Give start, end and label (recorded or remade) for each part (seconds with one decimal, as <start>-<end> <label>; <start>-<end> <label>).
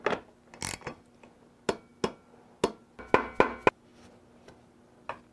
0.0-5.3 recorded